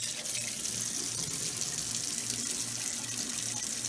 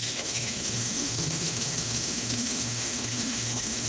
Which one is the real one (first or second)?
first